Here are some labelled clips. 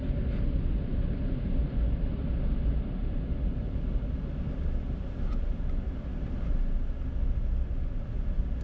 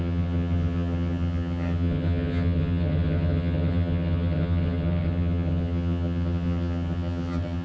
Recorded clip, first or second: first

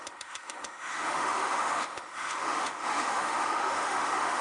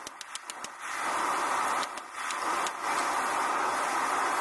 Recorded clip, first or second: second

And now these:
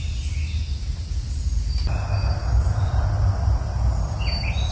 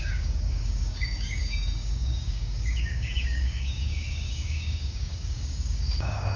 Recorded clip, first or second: first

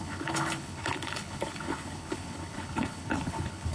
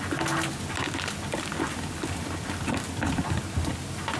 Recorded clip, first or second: second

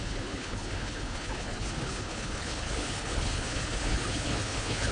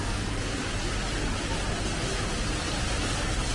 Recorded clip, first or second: second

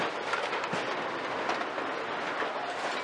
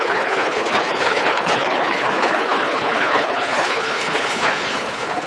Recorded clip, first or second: first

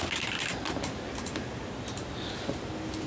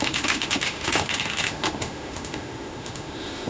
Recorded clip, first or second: first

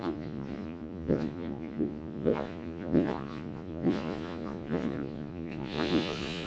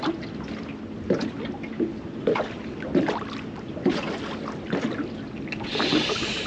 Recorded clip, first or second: second